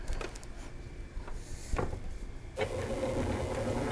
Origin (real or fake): fake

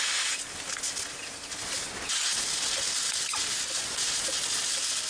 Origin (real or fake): real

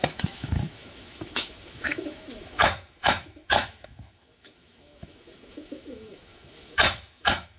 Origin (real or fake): fake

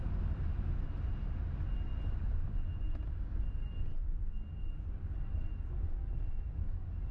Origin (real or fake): real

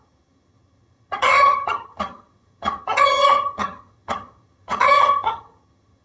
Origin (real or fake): fake